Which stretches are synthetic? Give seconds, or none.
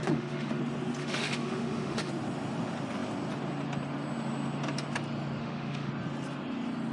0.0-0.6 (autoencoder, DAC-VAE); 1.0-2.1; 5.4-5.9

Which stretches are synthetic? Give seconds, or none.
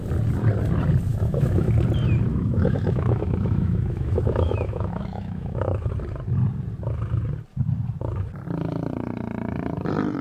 1.1-1.7 (autoencoder, DAC-VAE); 2.3-5.9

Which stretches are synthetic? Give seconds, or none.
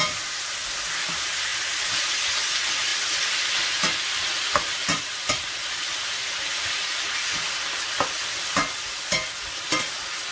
none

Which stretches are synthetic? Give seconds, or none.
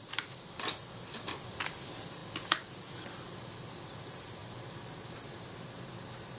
none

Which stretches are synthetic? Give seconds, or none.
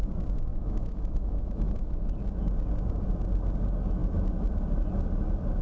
0.5-2.1 (autoencoder, DAC-VAE)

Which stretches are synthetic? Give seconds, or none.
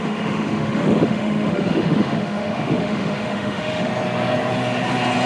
0.0-3.9 (autoencoder, DAC-VAE)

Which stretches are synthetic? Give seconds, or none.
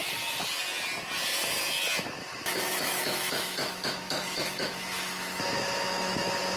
2.2-6.6 (autoencoder, DAC-VAE)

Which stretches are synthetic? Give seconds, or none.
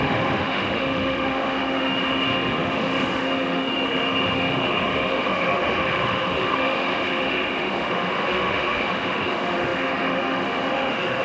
0.0-11.2 (autoencoder, DAC-VAE)